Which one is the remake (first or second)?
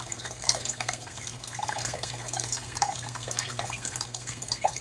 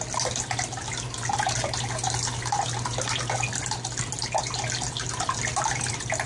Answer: first